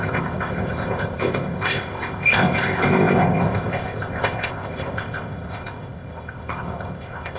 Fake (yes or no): yes